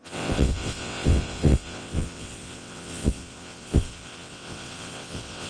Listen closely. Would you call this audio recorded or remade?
remade